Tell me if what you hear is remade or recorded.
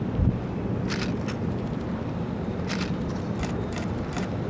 remade